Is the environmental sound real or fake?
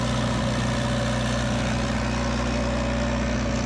real